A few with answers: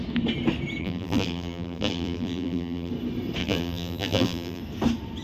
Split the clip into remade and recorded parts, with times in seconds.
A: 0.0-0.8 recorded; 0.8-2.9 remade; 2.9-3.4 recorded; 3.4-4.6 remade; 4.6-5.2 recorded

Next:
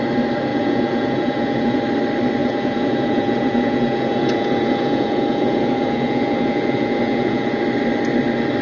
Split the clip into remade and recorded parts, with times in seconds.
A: 0.0-0.5 recorded; 0.5-1.8 remade; 1.8-2.4 recorded; 2.4-7.6 remade; 7.6-8.6 recorded

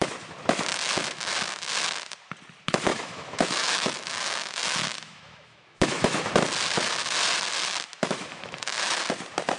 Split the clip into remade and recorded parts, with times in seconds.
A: 0.0-0.7 recorded; 0.7-1.3 remade; 1.3-2.9 recorded; 2.9-6.3 remade; 6.3-7.9 recorded; 7.9-9.0 remade; 9.0-9.6 recorded

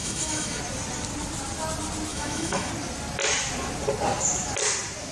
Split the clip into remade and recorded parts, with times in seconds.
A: 0.0-0.6 remade; 0.6-2.1 recorded; 2.1-2.7 remade; 2.7-5.1 recorded